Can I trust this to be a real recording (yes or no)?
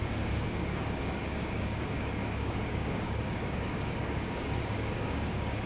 no